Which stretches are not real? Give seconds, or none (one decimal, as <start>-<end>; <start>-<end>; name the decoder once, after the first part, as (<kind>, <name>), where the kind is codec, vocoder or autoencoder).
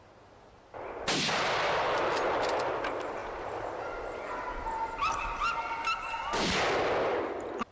none